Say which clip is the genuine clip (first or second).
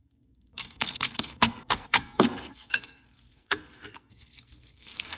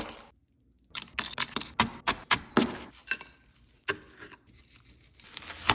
second